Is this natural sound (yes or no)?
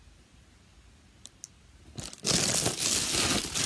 yes